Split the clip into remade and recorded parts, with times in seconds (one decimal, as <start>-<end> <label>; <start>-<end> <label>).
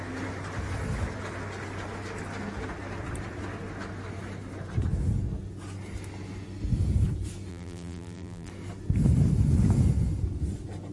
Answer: 0.0-7.5 recorded; 7.5-8.5 remade; 8.5-10.9 recorded